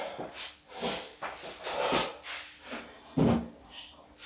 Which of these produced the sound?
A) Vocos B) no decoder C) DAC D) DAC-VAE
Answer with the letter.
B